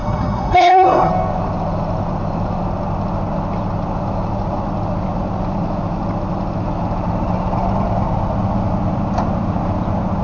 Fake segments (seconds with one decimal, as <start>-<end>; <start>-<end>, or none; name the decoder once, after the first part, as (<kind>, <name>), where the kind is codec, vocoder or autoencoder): 0.0-1.1 (codec, SNAC)